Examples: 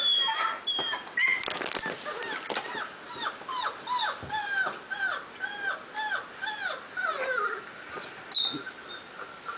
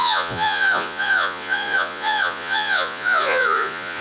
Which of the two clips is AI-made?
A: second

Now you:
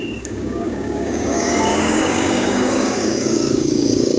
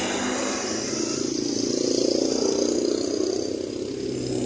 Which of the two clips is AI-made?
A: first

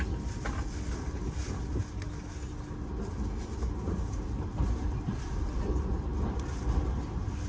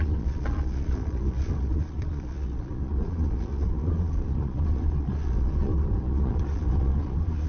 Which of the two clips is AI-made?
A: second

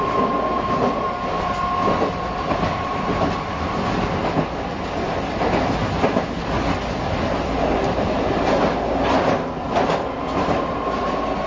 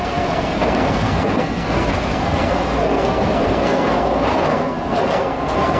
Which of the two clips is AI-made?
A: second